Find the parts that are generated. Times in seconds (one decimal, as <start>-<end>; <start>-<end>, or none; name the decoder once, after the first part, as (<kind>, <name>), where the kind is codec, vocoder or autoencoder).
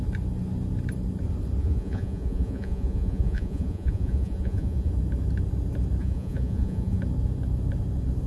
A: 1.6-4.9 (vocoder, Vocos); 6.0-7.0